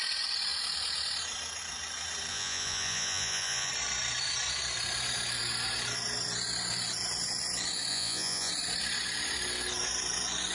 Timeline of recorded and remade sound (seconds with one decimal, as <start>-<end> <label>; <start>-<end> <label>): 0.0-2.3 recorded; 2.3-3.7 remade; 3.7-7.9 recorded; 7.9-8.5 remade; 8.5-10.5 recorded